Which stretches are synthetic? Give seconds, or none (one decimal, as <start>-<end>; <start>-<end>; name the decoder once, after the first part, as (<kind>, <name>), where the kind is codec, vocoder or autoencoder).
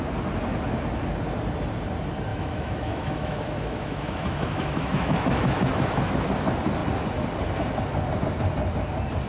2.3-6.3 (autoencoder, DAC-VAE)